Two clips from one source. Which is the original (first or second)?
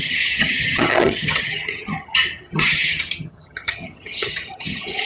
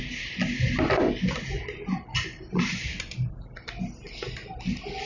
second